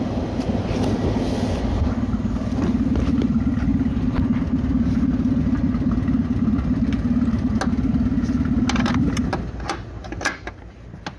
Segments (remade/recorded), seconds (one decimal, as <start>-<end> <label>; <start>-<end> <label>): 0.0-11.2 recorded